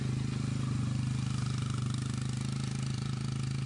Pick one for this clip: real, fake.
real